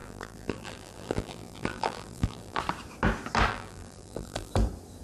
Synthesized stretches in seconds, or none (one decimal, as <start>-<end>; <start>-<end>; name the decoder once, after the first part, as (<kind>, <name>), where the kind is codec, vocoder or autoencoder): 0.0-2.6 (vocoder, BigVGAN v2); 3.5-4.5